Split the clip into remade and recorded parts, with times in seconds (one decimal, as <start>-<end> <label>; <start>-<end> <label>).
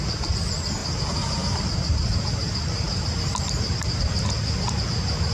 0.0-0.8 recorded; 0.8-4.0 remade; 4.0-5.3 recorded